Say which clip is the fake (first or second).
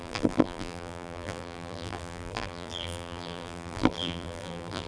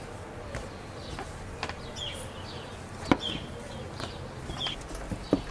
first